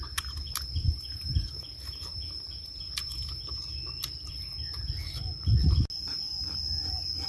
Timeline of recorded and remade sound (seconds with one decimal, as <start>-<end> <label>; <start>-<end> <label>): 0.0-3.7 remade; 3.7-7.3 recorded